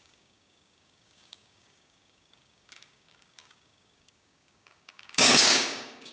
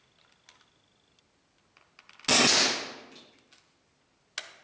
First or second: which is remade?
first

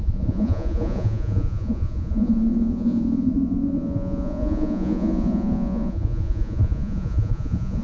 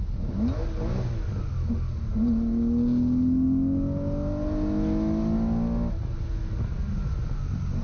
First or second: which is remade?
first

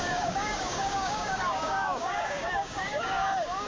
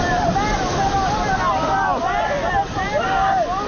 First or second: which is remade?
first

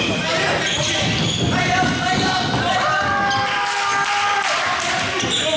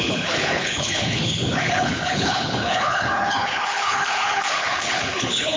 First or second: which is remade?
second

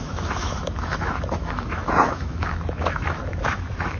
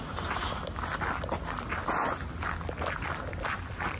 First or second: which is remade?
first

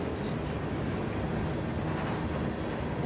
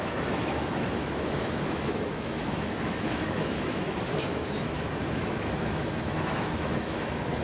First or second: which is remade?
second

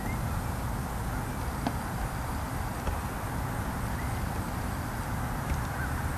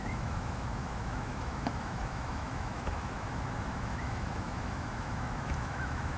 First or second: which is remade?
second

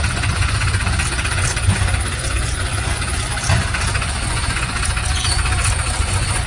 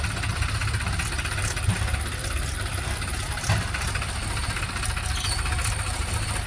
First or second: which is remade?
first